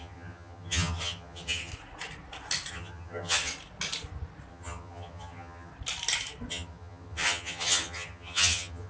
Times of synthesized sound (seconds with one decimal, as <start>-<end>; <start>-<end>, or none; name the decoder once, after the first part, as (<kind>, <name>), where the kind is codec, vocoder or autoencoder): 0.0-1.7 (vocoder, HiFi-GAN); 2.7-3.5; 4.5-5.7; 6.5-8.9